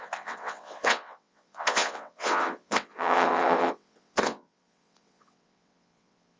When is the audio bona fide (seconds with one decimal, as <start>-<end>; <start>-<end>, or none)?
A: none